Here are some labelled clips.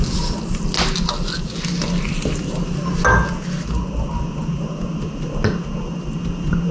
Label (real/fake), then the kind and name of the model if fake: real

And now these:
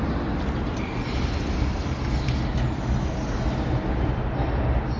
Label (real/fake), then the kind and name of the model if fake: real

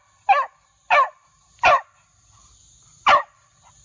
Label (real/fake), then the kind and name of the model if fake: real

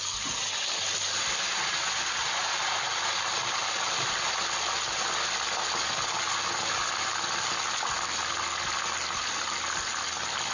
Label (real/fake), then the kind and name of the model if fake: real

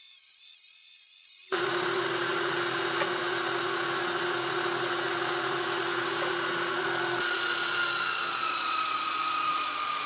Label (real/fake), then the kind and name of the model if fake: fake, vocoder, Vocos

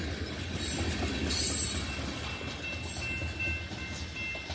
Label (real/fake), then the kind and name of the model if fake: real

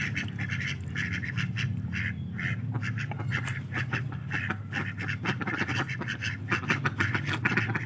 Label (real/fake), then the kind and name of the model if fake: real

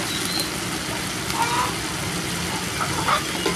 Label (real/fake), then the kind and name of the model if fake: real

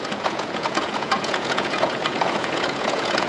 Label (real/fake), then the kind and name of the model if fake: fake, vocoder, Vocos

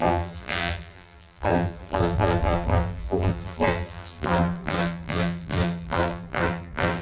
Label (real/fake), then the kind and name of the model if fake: fake, vocoder, BigVGAN v2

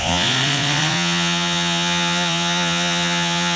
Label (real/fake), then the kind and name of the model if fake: fake, vocoder, Vocos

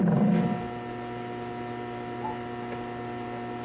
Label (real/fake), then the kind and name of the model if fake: real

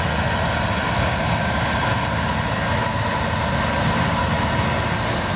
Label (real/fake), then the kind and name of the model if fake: real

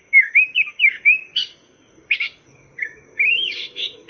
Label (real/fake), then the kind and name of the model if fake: fake, codec, DAC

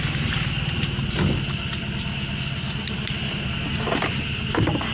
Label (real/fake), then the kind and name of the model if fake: real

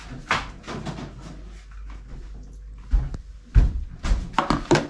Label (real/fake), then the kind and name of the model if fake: real